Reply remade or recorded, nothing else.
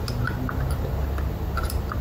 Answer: recorded